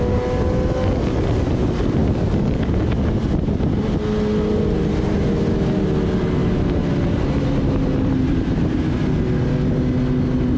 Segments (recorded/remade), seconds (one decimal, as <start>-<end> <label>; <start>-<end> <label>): 0.0-2.0 recorded; 2.0-2.6 remade; 2.6-10.6 recorded